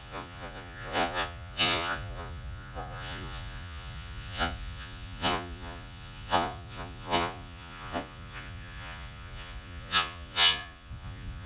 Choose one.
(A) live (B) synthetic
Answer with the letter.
B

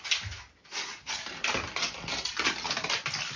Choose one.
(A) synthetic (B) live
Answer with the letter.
B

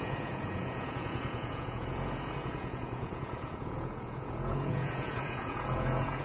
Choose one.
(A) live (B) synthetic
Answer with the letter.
B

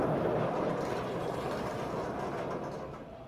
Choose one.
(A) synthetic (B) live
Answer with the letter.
B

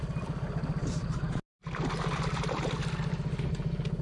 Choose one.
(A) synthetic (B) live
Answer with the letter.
B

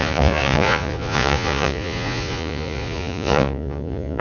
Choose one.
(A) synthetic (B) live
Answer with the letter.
A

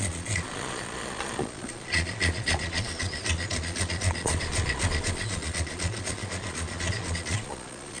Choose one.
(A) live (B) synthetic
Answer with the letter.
B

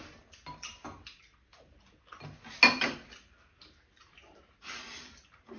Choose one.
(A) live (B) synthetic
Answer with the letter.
A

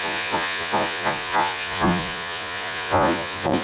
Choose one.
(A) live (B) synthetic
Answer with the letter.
B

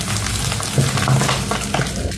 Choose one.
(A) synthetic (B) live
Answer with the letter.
B